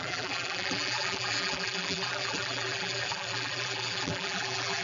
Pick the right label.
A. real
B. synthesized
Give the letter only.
B